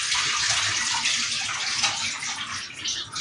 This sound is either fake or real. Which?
real